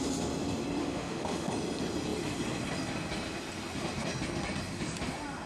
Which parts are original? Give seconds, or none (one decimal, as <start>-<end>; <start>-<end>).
0.0-0.8; 1.5-5.5